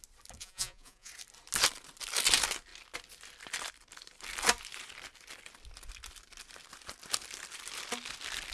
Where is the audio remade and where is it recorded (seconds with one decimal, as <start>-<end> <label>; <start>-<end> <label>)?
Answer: 0.0-0.4 recorded; 0.4-1.1 remade; 1.1-8.5 recorded